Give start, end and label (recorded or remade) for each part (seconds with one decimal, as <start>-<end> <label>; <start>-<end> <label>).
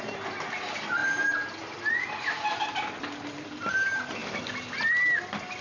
0.0-1.0 recorded; 1.0-3.7 remade; 3.7-4.2 recorded; 4.2-4.9 remade; 4.9-5.6 recorded